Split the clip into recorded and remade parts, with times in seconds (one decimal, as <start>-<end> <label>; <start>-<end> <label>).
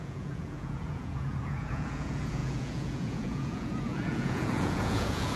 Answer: 0.0-5.4 remade